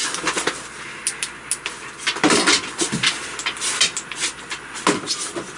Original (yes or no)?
yes